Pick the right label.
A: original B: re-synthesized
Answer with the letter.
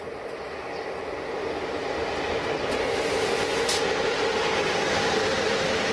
A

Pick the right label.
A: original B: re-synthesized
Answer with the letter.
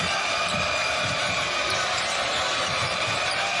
B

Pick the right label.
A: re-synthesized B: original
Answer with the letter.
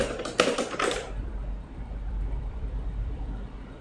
A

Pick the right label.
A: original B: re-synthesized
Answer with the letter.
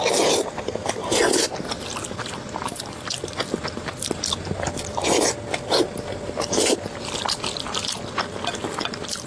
A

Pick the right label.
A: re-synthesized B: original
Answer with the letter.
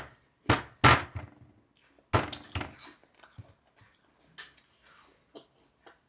B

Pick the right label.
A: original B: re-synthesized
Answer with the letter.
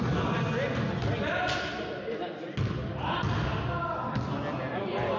A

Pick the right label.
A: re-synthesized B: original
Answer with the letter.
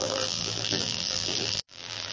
A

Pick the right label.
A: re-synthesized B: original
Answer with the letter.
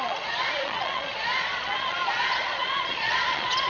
A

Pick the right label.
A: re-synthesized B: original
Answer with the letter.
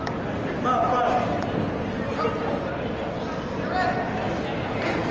B